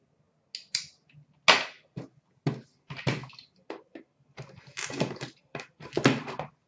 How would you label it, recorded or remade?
recorded